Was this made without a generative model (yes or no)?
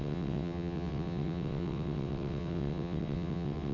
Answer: no